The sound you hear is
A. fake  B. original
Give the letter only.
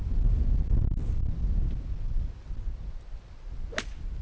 B